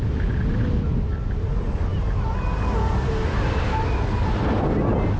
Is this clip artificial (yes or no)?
no